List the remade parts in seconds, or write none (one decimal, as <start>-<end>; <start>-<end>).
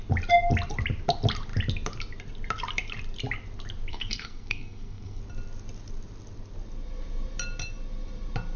3.9-5.2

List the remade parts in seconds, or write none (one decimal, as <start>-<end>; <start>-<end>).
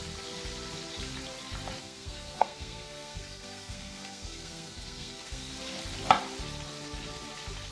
1.8-5.5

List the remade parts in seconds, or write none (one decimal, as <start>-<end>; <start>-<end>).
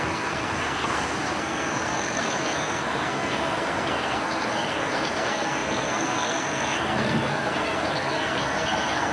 0.0-9.1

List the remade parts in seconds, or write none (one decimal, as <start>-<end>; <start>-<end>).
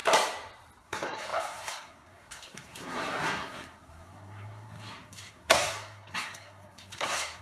0.8-7.4